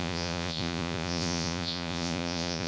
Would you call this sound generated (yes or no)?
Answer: yes